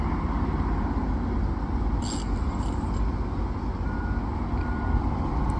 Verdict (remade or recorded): recorded